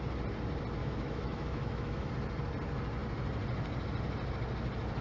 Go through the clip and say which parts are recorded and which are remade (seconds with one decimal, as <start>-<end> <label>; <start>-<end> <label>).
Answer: 0.0-0.8 recorded; 0.8-2.1 remade; 2.1-5.0 recorded